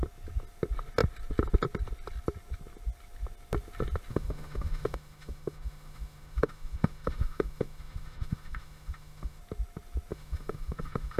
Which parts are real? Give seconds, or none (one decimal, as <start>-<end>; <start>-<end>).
0.0-4.1; 9.4-10.1